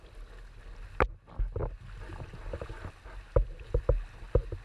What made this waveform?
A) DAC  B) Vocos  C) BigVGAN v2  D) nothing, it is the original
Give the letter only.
D